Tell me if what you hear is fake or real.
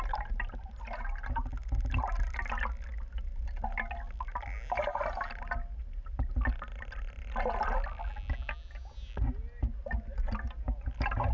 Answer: real